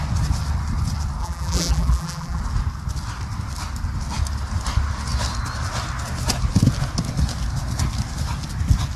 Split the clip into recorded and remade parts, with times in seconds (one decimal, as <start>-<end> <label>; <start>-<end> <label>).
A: 0.0-1.2 recorded; 1.2-2.4 remade; 2.4-9.0 recorded